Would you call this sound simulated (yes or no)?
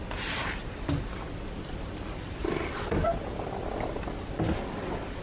no